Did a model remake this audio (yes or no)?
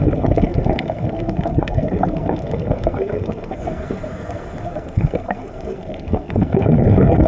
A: yes